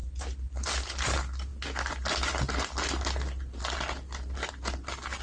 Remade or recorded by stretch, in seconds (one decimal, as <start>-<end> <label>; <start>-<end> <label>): 0.0-5.2 recorded